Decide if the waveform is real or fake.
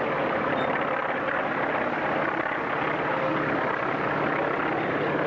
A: real